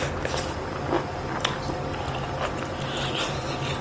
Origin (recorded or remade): recorded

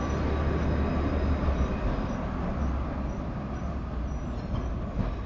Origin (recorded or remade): recorded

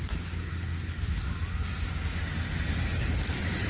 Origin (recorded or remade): recorded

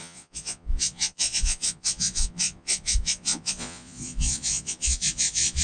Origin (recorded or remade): remade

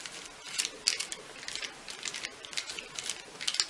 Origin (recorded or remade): recorded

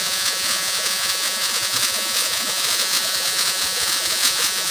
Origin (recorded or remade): remade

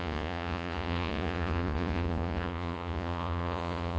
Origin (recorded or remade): remade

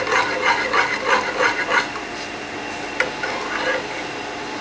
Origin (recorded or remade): recorded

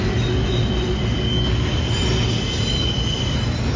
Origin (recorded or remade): recorded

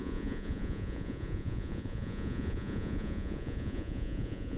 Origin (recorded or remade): remade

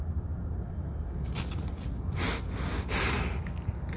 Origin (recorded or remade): recorded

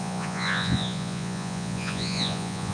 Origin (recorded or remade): remade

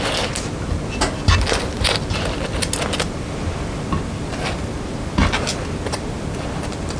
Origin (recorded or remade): recorded